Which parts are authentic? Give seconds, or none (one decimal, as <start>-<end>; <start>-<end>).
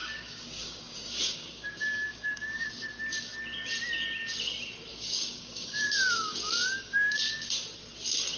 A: 2.7-4.9; 7.5-8.4